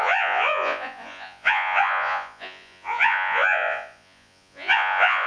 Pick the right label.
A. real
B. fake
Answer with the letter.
B